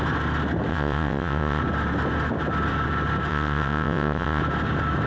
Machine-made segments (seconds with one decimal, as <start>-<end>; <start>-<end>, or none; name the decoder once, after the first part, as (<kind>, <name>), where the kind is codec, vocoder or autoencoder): 0.7-1.6 (vocoder, WaveNeXt); 3.3-4.4